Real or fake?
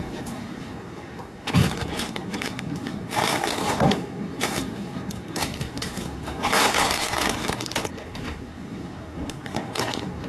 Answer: fake